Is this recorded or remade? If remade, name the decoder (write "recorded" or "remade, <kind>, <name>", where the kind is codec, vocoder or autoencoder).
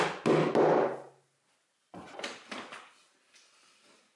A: recorded